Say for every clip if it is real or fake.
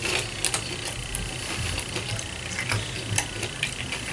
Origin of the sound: real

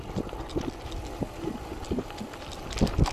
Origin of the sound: real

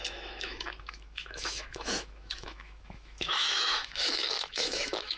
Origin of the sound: fake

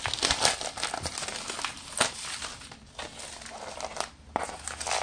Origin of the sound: real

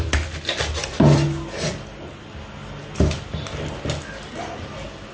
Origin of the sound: real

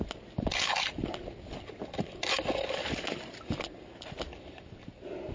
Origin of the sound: real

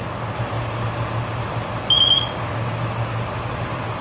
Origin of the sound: real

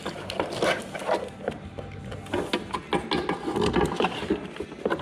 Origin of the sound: real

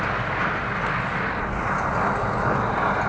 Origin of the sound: real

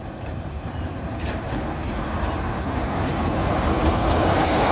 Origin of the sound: real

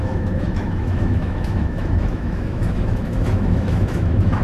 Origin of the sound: fake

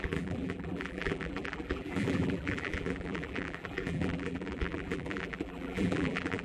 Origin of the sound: fake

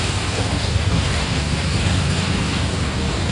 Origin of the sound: fake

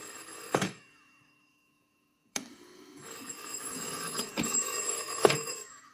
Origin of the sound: fake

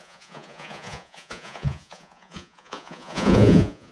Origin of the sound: fake